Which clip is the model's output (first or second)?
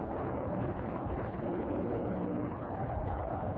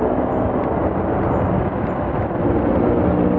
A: first